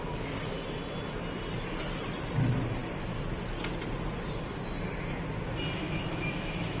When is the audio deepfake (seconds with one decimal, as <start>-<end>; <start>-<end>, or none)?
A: 5.8-6.8